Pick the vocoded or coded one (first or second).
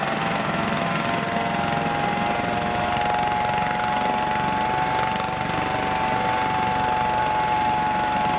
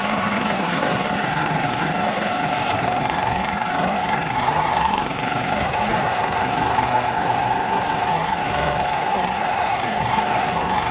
second